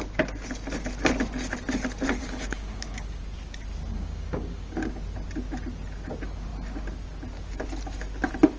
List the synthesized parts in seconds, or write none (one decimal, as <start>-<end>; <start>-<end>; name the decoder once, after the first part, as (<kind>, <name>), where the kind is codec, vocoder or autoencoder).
2.2-3.2 (codec, DAC); 3.9-4.9